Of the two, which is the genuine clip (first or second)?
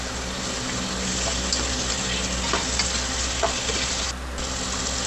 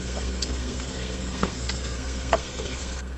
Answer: first